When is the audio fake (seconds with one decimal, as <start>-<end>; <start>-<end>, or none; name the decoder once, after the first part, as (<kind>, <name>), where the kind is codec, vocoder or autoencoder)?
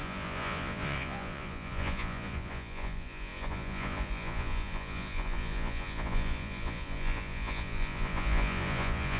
0.0-9.2 (vocoder, Vocos)